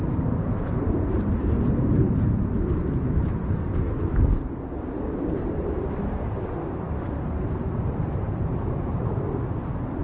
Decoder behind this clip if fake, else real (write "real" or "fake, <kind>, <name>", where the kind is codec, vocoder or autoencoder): fake, vocoder, BigVGAN v2